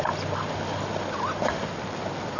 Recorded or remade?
recorded